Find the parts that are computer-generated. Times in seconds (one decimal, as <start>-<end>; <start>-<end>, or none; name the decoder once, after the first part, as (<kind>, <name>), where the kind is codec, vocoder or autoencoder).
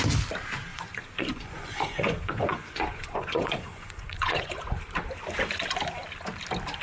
0.7-4.8 (vocoder, Vocos)